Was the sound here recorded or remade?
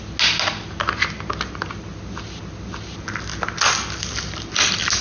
recorded